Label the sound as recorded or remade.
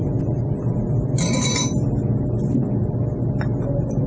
recorded